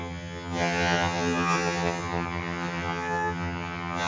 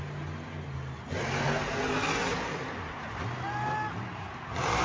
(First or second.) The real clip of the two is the second